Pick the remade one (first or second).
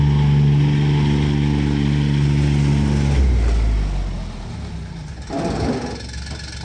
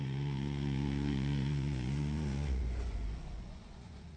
second